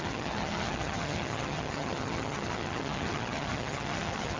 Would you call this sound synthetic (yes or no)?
yes